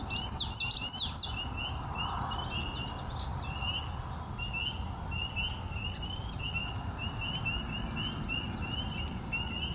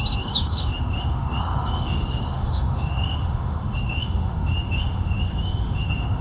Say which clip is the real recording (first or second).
first